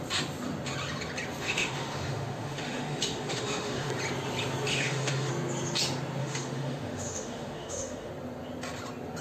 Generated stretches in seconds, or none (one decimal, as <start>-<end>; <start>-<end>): 1.4-3.9; 4.7-5.3; 6.2-8.1